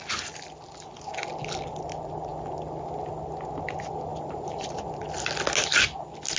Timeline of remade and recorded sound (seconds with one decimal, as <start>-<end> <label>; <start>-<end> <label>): 0.0-4.1 recorded; 4.1-5.1 remade; 5.1-6.4 recorded